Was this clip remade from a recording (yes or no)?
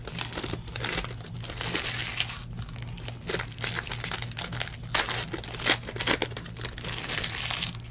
no